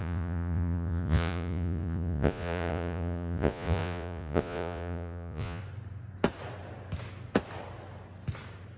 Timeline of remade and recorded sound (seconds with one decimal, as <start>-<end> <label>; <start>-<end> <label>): 0.0-5.6 remade; 5.6-8.8 recorded